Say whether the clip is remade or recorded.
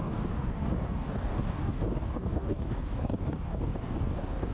remade